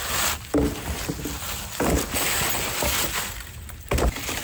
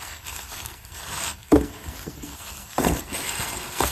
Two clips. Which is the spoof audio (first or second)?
second